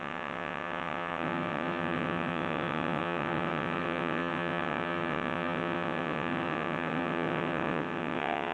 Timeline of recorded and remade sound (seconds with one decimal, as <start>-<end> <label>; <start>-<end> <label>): 0.0-8.5 remade